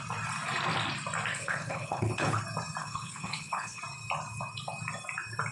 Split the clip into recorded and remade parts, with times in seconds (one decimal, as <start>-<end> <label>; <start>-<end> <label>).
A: 0.0-1.3 recorded; 1.3-2.4 remade; 2.4-2.8 recorded; 2.8-3.8 remade; 3.8-5.5 recorded